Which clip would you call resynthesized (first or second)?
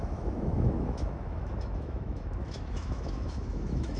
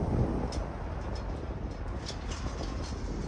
first